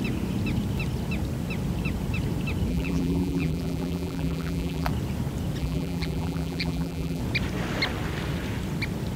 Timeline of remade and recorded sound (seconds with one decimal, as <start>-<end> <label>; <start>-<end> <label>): 0.0-2.7 recorded; 2.7-4.9 remade; 4.9-5.6 recorded; 5.6-7.2 remade; 7.2-9.2 recorded